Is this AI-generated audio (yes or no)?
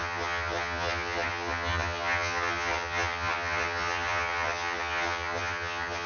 yes